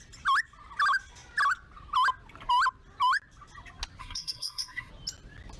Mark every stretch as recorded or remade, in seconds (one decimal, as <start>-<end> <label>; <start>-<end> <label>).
0.0-4.0 recorded; 4.0-4.9 remade; 4.9-5.6 recorded